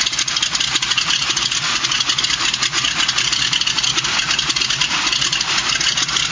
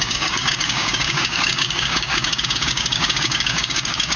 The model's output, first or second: second